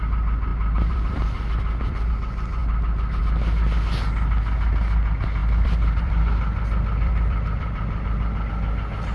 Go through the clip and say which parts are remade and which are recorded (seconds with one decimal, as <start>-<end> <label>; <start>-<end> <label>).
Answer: 0.0-0.5 recorded; 0.5-2.1 remade; 2.1-5.4 recorded; 5.4-8.5 remade; 8.5-9.1 recorded